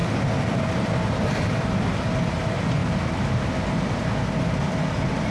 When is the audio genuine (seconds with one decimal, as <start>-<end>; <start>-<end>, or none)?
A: 2.8-4.4